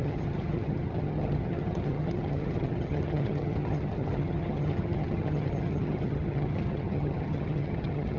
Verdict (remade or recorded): remade